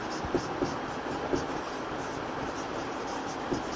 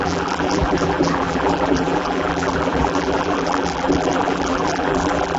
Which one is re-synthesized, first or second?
second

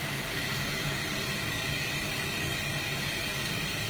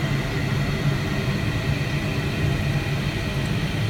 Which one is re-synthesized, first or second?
first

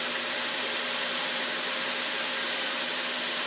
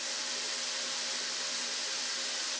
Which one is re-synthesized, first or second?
first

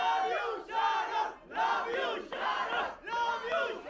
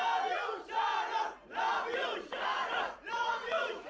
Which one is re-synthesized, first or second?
second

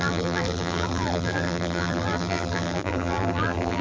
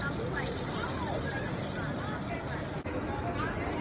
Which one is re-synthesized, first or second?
first